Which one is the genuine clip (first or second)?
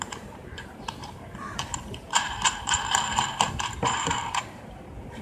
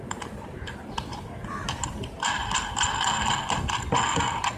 second